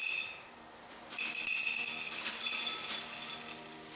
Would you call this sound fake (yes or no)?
no